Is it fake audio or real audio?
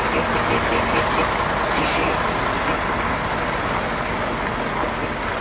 real